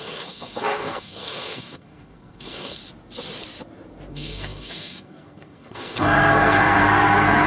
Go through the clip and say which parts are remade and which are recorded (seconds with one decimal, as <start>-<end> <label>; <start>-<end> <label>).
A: 0.0-2.8 remade; 2.8-4.1 recorded; 4.1-7.5 remade